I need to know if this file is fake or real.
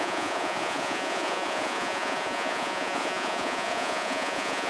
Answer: fake